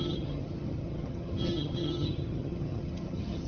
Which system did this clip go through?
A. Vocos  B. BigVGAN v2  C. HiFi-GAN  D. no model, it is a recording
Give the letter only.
C